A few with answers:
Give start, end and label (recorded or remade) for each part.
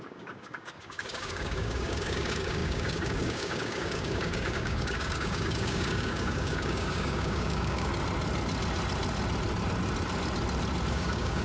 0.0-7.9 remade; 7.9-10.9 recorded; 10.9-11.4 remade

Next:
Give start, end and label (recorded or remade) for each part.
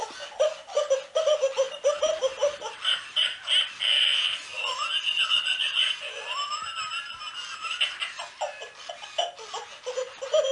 0.0-10.5 recorded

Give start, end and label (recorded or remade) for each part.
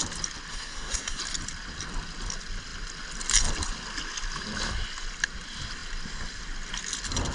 0.0-0.5 recorded; 0.5-1.2 remade; 1.2-7.3 recorded